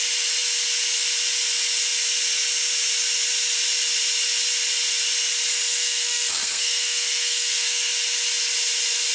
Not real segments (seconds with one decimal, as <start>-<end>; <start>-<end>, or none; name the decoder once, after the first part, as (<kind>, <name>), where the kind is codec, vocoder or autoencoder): 5.7-7.9 (codec, SNAC)